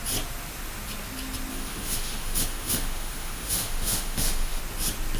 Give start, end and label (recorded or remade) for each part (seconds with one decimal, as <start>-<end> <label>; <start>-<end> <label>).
0.0-1.5 recorded; 1.5-4.6 remade; 4.6-5.2 recorded